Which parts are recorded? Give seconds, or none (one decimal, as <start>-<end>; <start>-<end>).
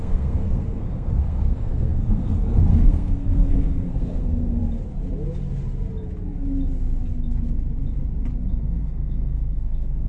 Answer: 4.6-8.5